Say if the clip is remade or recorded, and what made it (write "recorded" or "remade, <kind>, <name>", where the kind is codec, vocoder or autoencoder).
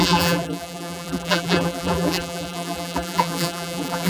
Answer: remade, vocoder, BigVGAN v2